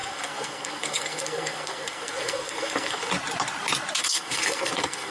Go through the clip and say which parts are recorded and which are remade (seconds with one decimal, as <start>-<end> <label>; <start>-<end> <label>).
0.0-3.1 remade; 3.1-4.0 recorded; 4.0-5.1 remade